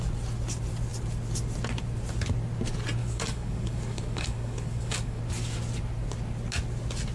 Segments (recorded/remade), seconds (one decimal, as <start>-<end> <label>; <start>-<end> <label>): 0.0-3.0 recorded; 3.0-5.2 remade; 5.2-7.1 recorded